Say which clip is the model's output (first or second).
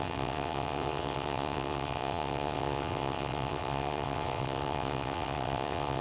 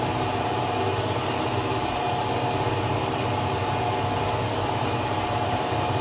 first